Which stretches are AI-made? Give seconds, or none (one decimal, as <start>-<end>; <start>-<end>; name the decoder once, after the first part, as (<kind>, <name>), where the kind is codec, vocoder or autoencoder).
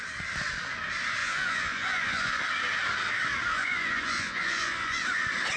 1.2-2.4 (vocoder, Vocos); 3.5-5.0